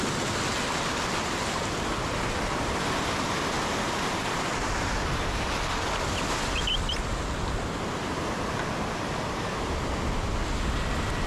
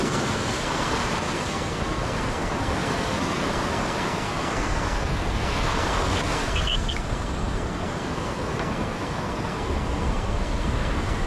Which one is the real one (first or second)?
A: first